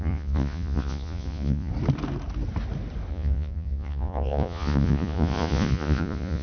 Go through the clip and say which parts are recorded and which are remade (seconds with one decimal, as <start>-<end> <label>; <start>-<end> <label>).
0.0-1.7 remade; 1.7-3.1 recorded; 3.1-6.4 remade